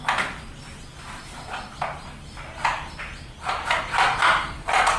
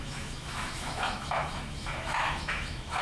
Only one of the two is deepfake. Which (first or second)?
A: second